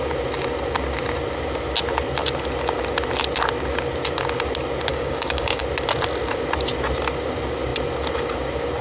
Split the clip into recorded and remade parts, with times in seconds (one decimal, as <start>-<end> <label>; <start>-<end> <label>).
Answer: 0.0-4.9 recorded; 4.9-5.6 remade; 5.6-8.8 recorded